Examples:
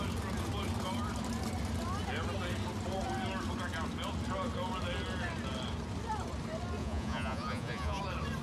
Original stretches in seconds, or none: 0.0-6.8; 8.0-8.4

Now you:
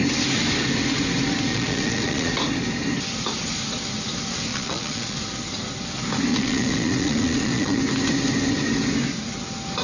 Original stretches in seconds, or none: 0.0-1.5; 2.3-4.5; 5.2-6.3; 7.8-9.8

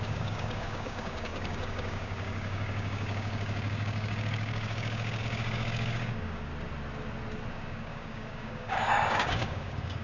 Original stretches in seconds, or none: 6.5-7.5

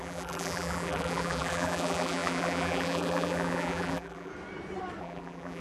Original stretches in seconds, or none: 4.3-5.0

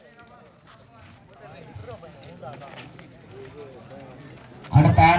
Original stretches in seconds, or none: 0.0-5.2

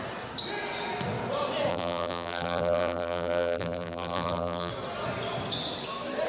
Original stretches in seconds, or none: 0.0-1.7; 4.7-6.3